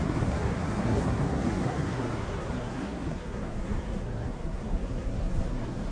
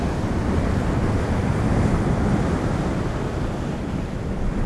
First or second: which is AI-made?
first